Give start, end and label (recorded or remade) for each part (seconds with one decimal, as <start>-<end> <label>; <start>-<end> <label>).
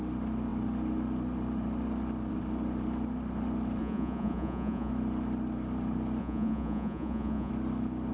0.0-3.8 recorded; 3.8-4.9 remade; 4.9-6.2 recorded; 6.2-7.5 remade; 7.5-8.1 recorded